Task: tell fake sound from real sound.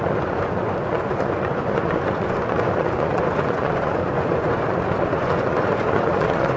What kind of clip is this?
fake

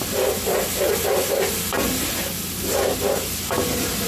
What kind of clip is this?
real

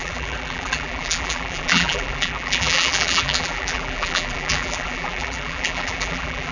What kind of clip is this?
fake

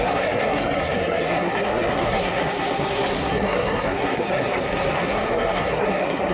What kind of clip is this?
fake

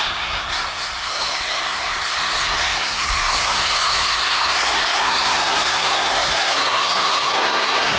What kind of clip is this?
fake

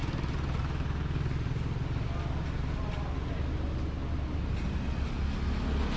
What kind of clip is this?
real